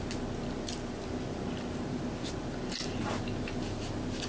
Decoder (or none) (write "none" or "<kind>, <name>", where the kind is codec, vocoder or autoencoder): none